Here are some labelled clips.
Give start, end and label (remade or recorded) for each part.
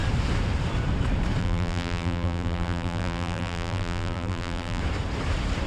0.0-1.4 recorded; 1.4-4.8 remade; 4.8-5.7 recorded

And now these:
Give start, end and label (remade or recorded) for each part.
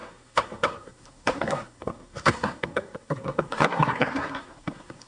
0.0-5.1 remade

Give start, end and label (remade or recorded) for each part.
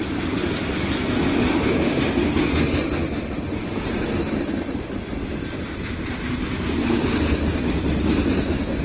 0.0-8.8 recorded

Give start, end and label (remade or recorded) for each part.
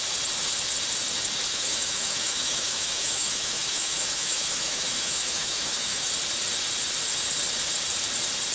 0.0-1.5 recorded; 1.5-6.1 remade; 6.1-8.5 recorded